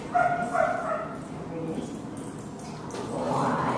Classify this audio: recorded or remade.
recorded